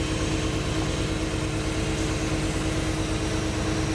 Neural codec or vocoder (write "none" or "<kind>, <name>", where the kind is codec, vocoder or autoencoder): none